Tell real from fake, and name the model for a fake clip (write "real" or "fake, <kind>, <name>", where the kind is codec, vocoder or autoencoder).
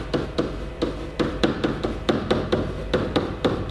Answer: fake, vocoder, BigVGAN v2